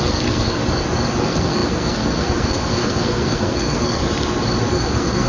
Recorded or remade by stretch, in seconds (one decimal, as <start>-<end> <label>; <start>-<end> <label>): 0.0-0.6 remade; 0.6-1.2 recorded; 1.2-4.0 remade; 4.0-4.7 recorded; 4.7-5.3 remade